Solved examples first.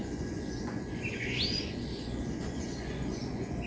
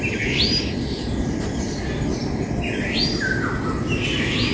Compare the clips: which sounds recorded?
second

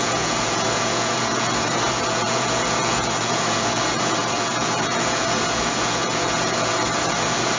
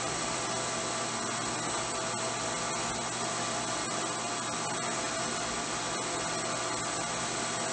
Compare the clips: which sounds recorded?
second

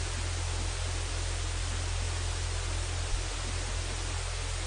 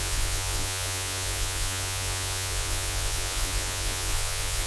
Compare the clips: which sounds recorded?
first